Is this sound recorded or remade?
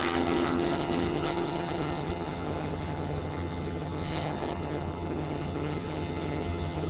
remade